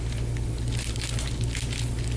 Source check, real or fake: real